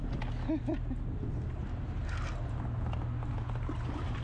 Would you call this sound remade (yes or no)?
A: no